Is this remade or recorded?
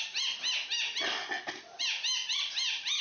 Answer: recorded